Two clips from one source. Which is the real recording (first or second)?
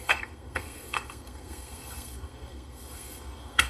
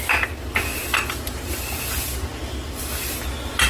second